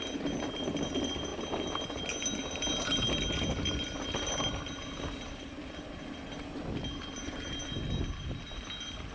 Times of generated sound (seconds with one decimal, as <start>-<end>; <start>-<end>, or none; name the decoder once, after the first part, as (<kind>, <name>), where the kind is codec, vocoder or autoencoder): none